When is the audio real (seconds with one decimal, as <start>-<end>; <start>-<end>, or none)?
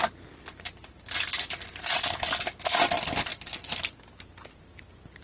0.0-5.2